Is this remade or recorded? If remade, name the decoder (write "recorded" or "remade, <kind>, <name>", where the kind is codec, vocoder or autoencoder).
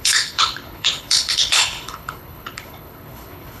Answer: remade, codec, HILCodec